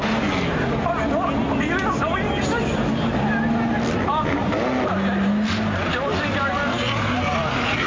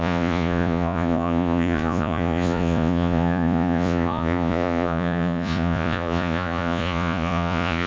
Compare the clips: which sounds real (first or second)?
first